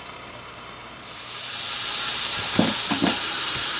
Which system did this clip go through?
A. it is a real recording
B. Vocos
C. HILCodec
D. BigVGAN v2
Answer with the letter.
D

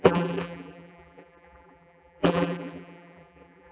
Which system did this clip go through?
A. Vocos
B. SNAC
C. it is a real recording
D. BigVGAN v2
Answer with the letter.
D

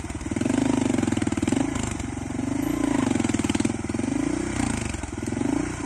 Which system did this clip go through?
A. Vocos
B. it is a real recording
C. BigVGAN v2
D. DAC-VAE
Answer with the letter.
C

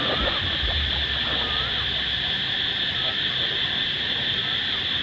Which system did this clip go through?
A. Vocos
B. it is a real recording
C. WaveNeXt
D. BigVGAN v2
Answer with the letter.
D